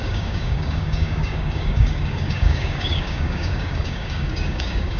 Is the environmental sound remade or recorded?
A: remade